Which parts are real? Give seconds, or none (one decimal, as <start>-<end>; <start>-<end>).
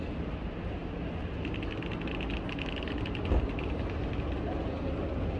0.0-5.4